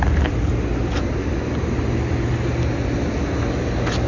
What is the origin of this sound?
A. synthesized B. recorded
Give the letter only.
B